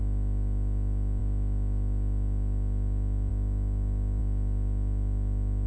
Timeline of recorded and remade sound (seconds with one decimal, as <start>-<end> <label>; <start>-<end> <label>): 0.0-5.7 recorded